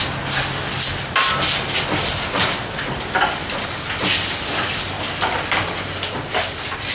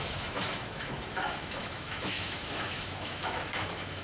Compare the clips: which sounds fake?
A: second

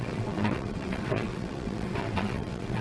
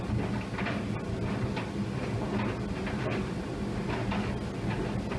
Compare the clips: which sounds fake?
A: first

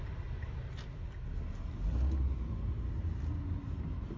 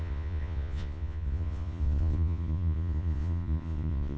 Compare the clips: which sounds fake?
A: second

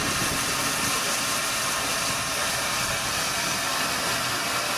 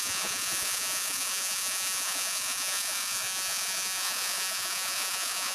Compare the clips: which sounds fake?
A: second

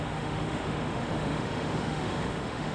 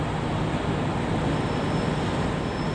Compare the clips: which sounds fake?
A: first